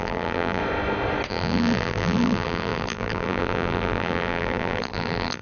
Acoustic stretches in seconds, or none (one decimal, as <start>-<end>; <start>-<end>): 0.6-1.3